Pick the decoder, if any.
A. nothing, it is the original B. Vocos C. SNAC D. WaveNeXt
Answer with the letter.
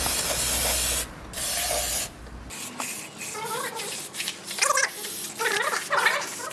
A